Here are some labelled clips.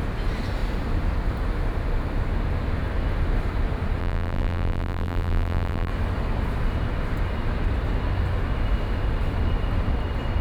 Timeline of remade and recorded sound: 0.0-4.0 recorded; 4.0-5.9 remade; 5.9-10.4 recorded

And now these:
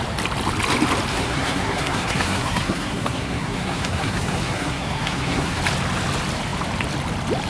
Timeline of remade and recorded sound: 0.0-1.1 recorded; 1.1-5.6 remade; 5.6-7.5 recorded

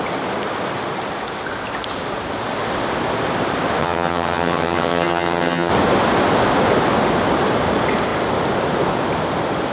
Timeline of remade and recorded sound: 0.0-3.8 recorded; 3.8-5.7 remade; 5.7-9.7 recorded

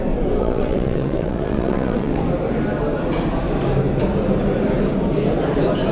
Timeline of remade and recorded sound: 0.0-0.4 recorded; 0.4-2.2 remade; 2.2-5.9 recorded

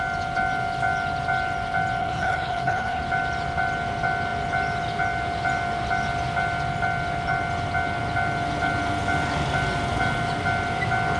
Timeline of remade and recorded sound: 0.0-2.0 recorded; 2.0-3.0 remade; 3.0-11.2 recorded

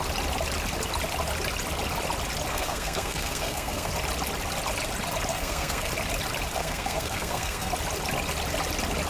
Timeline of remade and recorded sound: 0.0-2.5 recorded; 2.5-3.9 remade; 3.9-5.3 recorded; 5.3-5.9 remade; 5.9-6.6 recorded; 6.6-7.7 remade; 7.7-9.1 recorded

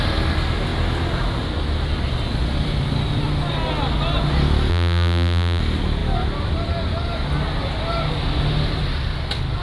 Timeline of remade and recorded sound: 0.0-4.7 recorded; 4.7-5.6 remade; 5.6-9.6 recorded